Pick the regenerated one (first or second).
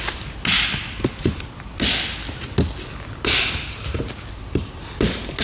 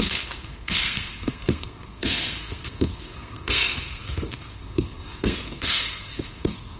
second